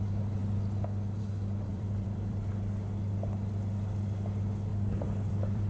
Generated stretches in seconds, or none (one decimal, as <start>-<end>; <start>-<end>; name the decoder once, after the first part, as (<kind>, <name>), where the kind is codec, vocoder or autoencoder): 1.7-2.5 (vocoder, BigVGAN v2); 4.7-5.7